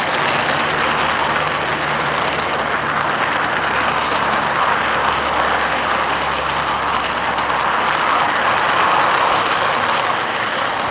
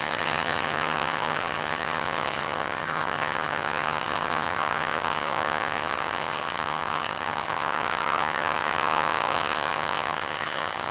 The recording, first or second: first